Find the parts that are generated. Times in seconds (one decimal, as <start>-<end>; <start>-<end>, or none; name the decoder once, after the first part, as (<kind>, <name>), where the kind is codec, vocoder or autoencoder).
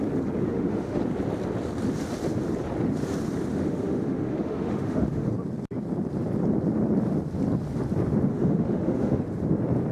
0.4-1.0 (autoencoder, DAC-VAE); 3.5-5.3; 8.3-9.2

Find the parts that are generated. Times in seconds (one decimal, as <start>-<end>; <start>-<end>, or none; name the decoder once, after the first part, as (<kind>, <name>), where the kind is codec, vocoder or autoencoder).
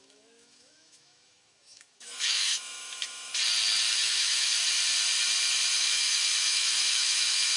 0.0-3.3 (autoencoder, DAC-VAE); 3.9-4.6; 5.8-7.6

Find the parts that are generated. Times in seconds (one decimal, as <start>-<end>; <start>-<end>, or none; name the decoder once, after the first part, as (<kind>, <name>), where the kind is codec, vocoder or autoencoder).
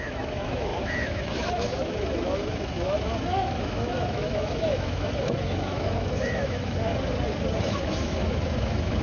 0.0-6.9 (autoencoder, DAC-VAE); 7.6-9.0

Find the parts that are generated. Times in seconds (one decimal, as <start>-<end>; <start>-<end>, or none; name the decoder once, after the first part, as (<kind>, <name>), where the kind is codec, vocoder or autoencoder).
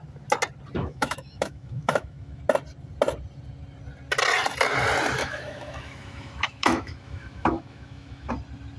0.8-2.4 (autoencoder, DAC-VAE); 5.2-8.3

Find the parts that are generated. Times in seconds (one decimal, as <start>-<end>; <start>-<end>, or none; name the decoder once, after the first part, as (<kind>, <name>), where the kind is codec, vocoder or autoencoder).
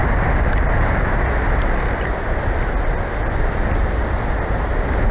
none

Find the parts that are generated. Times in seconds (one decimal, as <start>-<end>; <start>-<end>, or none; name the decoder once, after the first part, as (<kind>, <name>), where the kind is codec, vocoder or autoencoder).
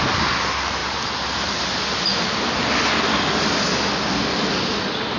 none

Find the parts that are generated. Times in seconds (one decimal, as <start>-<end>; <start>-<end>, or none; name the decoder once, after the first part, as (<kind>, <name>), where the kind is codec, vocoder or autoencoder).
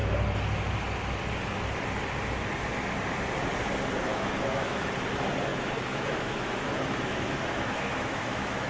4.1-4.9 (autoencoder, DAC-VAE); 5.5-8.7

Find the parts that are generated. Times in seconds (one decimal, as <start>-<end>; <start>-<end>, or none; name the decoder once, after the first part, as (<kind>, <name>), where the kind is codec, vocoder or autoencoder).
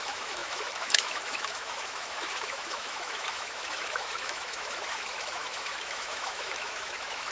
0.0-7.3 (autoencoder, DAC-VAE)